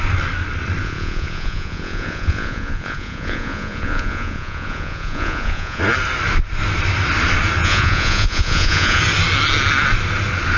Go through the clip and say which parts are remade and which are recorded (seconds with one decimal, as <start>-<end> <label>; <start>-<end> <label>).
0.0-0.8 recorded; 0.8-5.8 remade; 5.8-7.6 recorded; 7.6-9.0 remade; 9.0-10.6 recorded